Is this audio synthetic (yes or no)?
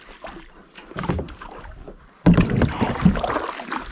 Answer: no